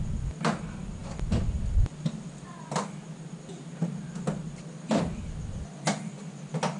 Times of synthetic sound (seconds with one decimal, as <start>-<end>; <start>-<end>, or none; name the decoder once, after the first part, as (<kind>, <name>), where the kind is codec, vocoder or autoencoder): none

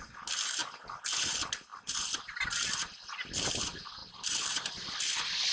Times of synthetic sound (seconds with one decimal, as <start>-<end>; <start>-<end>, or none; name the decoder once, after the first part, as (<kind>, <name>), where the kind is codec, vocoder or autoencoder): none

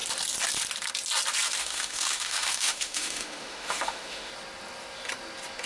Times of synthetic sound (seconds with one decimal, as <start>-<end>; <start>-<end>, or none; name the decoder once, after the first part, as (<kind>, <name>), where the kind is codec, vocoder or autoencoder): 1.6-4.3 (autoencoder, DAC-VAE)

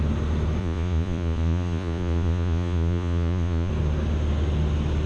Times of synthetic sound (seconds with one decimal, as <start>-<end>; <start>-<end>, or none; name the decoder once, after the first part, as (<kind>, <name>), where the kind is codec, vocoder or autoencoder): 0.6-3.7 (vocoder, Vocos)

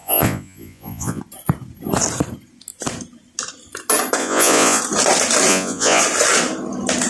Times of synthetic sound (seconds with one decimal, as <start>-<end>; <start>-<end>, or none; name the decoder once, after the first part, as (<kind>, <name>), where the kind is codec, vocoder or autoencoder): 0.0-1.2 (vocoder, Vocos); 4.2-4.8; 5.5-6.0

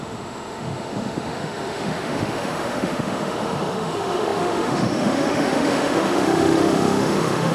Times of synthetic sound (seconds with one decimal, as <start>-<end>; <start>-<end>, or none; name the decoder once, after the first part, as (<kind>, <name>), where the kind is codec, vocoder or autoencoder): 0.0-7.5 (autoencoder, DAC-VAE)

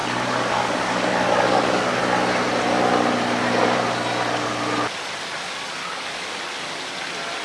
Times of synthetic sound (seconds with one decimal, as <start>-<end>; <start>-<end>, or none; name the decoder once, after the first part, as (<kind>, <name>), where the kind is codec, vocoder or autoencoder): 0.0-2.0 (codec, DAC); 5.8-6.4

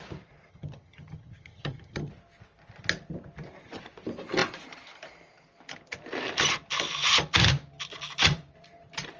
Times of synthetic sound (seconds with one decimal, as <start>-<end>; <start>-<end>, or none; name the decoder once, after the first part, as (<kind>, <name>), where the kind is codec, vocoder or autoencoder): 0.5-2.1 (vocoder, HiFi-GAN)